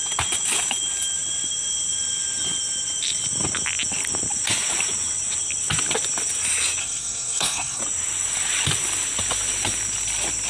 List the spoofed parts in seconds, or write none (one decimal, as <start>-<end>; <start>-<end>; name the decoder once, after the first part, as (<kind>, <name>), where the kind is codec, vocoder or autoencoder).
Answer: 6.8-7.8 (codec, SNAC)